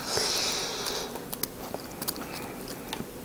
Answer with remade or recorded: recorded